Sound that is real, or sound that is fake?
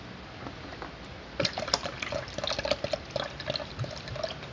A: real